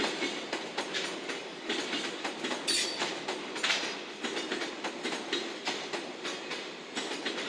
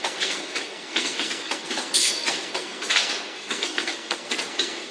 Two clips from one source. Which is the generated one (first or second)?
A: second